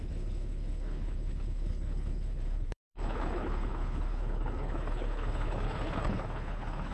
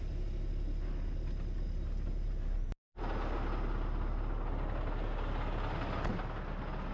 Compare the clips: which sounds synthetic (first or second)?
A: first